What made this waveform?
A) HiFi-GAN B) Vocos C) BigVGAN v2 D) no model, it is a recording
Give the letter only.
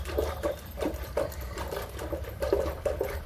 C